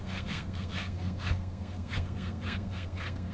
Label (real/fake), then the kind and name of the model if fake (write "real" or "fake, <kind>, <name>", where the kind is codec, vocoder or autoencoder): fake, codec, SNAC